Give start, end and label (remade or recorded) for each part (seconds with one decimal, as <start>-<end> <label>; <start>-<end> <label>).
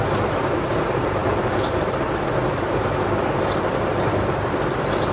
0.0-5.1 remade